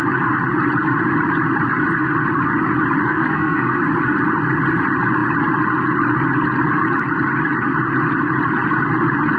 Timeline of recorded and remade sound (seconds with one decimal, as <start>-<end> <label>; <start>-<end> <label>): 0.0-3.1 recorded; 3.1-3.8 remade; 3.8-9.4 recorded